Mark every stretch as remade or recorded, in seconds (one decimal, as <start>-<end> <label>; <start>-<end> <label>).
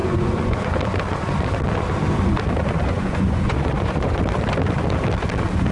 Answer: 0.0-0.7 remade; 0.7-2.6 recorded; 2.6-4.2 remade; 4.2-5.7 recorded